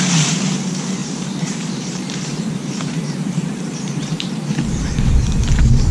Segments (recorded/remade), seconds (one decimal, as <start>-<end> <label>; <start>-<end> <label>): 0.0-1.0 recorded; 1.0-4.5 remade; 4.5-5.9 recorded